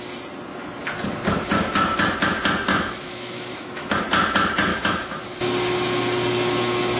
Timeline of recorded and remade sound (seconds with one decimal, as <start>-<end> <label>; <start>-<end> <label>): 0.0-2.7 recorded; 2.7-3.9 remade; 3.9-4.7 recorded; 4.7-5.2 remade; 5.2-7.0 recorded